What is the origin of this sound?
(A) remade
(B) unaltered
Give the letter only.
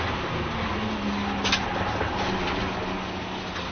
B